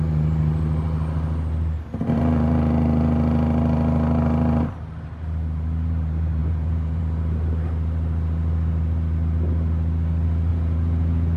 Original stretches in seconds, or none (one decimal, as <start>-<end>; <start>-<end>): 0.0-6.4; 7.0-10.5